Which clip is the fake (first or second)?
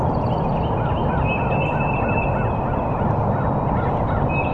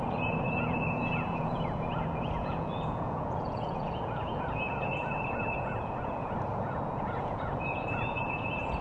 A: second